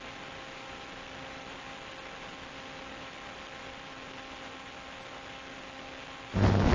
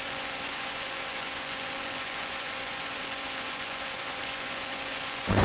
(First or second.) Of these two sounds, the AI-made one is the second